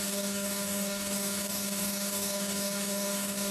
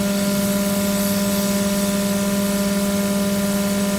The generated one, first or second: first